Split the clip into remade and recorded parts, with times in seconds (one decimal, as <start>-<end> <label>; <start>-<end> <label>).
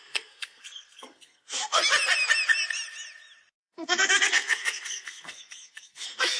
0.0-1.8 remade; 1.8-3.6 recorded; 3.6-6.4 remade